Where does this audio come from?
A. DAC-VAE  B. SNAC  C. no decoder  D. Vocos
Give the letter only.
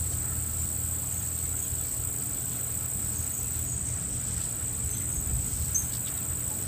C